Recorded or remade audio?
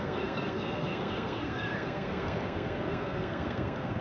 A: remade